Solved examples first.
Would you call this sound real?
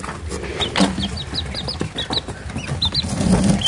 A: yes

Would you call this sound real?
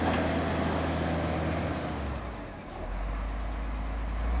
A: yes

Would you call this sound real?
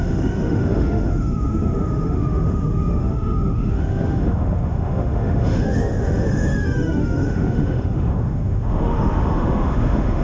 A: no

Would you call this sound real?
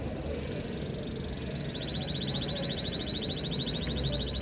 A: yes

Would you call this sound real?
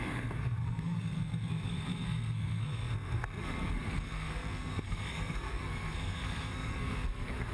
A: no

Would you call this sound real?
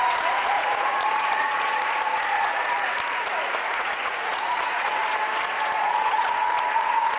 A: no